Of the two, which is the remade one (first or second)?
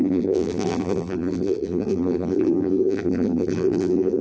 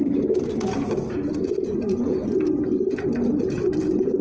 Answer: first